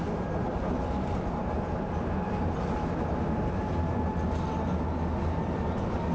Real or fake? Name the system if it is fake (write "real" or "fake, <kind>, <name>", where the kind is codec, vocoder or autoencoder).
real